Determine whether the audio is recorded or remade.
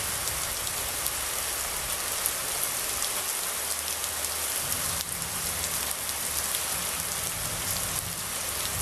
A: recorded